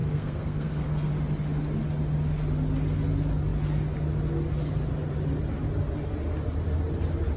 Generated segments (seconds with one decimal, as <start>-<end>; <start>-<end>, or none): 0.0-1.1